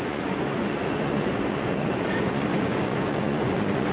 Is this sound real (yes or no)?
no